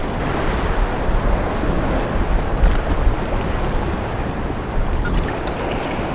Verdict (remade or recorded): recorded